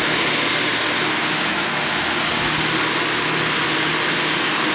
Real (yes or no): yes